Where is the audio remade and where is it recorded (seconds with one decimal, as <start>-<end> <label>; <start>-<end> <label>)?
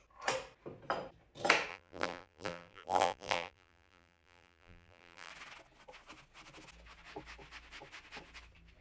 0.0-1.7 recorded; 1.7-5.3 remade; 5.3-8.8 recorded